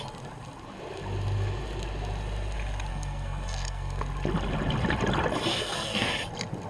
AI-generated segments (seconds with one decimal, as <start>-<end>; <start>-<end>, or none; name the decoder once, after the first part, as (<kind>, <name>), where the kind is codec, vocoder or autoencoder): 2.9-4.0 (codec, SNAC); 5.5-6.1